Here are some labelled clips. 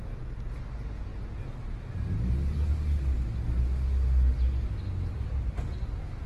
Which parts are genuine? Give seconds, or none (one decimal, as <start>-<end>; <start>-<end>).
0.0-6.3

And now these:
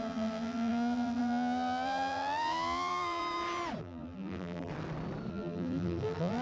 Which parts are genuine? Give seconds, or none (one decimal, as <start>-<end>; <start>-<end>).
3.2-3.8; 4.7-5.3

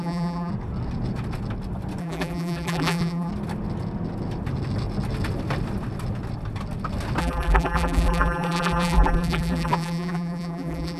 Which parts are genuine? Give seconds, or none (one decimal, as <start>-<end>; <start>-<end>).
0.5-2.0; 3.3-7.2

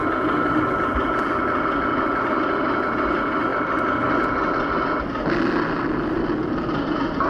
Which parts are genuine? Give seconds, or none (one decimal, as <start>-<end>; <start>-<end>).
0.0-7.3

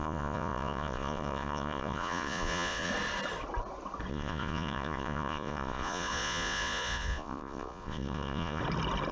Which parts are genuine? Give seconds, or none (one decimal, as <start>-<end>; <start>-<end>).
2.9-4.1; 8.6-9.1